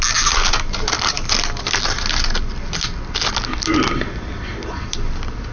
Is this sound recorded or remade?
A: recorded